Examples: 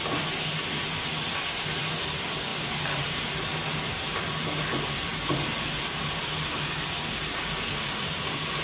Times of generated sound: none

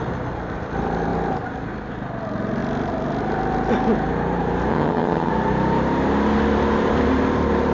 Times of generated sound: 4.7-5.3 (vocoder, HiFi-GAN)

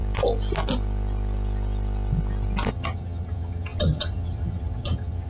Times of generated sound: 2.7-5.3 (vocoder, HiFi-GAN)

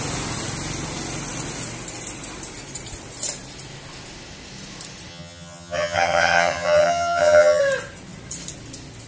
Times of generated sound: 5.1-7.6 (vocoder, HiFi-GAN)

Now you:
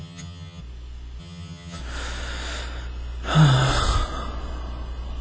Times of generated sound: 0.0-0.6 (vocoder, HiFi-GAN); 1.2-1.8

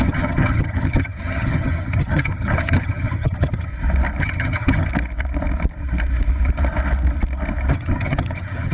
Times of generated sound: 0.0-3.7 (vocoder, HiFi-GAN); 4.2-4.9; 7.7-8.7